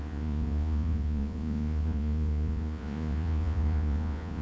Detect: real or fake fake